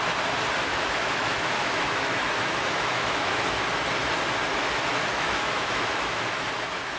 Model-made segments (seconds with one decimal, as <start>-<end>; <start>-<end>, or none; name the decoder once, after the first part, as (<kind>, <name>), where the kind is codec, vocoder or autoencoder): 0.7-3.6 (autoencoder, DAC-VAE); 4.5-7.0